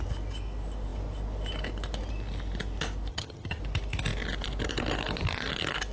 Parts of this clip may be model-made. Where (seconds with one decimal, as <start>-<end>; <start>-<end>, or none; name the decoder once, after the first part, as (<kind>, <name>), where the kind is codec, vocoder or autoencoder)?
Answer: 3.1-3.6 (vocoder, HiFi-GAN)